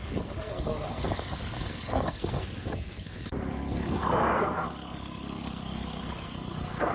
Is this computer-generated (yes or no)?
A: yes